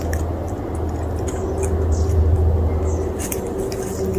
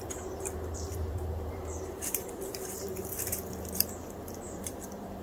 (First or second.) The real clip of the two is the first